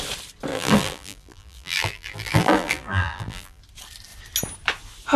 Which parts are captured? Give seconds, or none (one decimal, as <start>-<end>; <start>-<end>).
0.0-0.5; 3.6-5.2